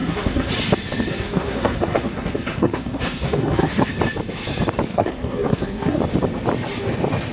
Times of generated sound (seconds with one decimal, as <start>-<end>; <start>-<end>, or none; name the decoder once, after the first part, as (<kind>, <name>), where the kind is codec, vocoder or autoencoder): 0.0-0.5 (codec, SNAC); 1.1-3.9; 4.9-6.0